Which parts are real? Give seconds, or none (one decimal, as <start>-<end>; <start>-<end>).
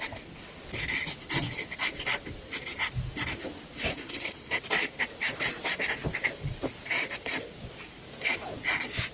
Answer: 0.0-3.9; 4.6-9.1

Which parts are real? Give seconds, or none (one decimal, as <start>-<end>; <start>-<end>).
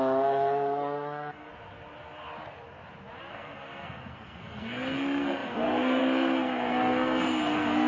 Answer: 1.5-3.3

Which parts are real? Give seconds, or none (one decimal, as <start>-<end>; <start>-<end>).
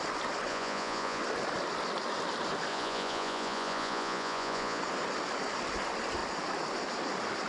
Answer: 0.0-0.5; 1.2-2.7; 4.8-7.5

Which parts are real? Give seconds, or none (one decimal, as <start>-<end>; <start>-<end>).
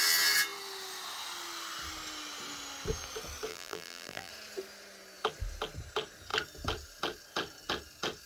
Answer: 0.0-3.5; 4.3-8.3